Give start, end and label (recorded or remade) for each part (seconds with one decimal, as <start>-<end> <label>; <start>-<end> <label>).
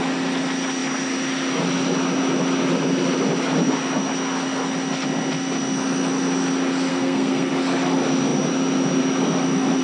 0.0-6.9 recorded; 6.9-7.5 remade; 7.5-9.8 recorded